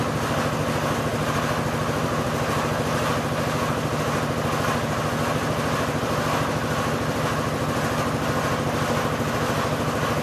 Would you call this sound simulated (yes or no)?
no